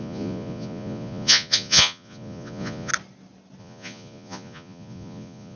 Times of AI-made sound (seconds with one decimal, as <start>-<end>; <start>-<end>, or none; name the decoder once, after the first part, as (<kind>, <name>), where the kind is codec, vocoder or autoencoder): 0.0-2.9 (vocoder, Vocos); 3.6-5.6